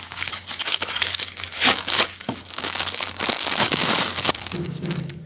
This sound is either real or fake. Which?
fake